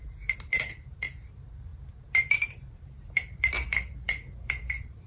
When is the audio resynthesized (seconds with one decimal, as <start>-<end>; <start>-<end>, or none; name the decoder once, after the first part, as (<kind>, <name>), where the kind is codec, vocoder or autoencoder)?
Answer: 0.0-1.7 (vocoder, BigVGAN v2); 2.4-5.1